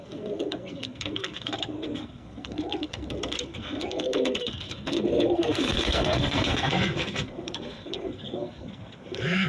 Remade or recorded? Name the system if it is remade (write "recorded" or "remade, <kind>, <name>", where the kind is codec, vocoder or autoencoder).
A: remade, codec, SNAC